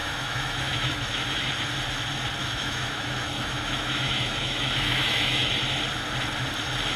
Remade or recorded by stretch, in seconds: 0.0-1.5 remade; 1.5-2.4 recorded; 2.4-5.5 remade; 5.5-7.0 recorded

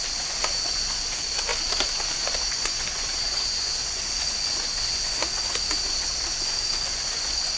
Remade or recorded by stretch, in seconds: 0.0-1.5 remade; 1.5-2.2 recorded; 2.2-7.6 remade

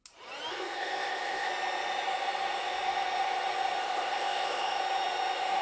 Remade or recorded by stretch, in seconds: 0.0-0.5 recorded; 0.5-1.5 remade; 1.5-3.8 recorded; 3.8-4.8 remade; 4.8-5.6 recorded

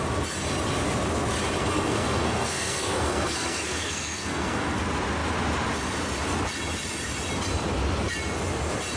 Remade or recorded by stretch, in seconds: 0.0-1.6 recorded; 1.6-4.8 remade; 4.8-9.0 recorded

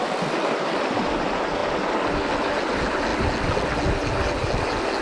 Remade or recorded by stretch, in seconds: 0.0-5.0 recorded